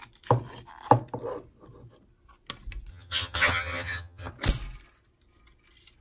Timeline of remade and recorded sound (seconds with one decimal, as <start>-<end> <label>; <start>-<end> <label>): 0.0-2.9 recorded; 2.9-4.3 remade; 4.3-6.0 recorded